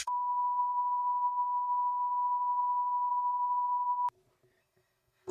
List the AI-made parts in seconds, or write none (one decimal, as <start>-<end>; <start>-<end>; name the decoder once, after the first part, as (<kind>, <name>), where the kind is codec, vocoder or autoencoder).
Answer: 0.0-3.1 (codec, SNAC); 4.6-5.3